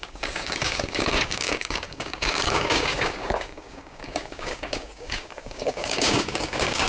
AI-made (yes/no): yes